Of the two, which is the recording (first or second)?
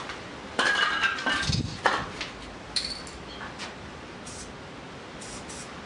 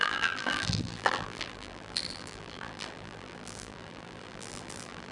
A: first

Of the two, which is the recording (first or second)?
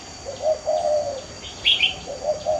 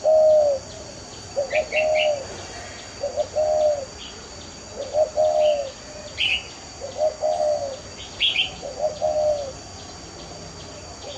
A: second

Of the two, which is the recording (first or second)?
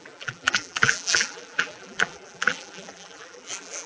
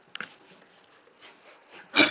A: second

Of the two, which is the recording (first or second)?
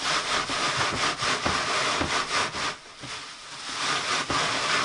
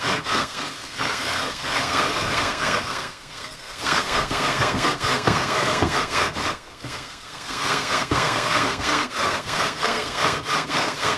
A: first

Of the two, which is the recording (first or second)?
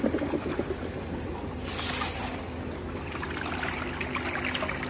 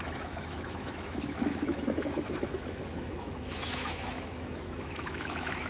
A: first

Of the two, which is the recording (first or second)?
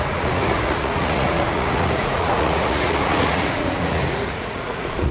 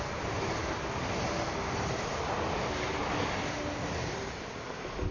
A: second